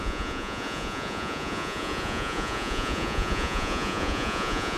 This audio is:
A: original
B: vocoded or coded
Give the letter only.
B